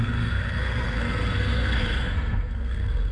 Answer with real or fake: fake